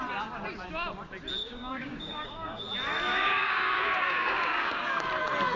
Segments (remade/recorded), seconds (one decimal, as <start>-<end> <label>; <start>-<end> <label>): 0.0-1.4 recorded; 1.4-2.6 remade; 2.6-3.1 recorded; 3.1-5.1 remade; 5.1-5.6 recorded